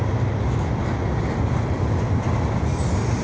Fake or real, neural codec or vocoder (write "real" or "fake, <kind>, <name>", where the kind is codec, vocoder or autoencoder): real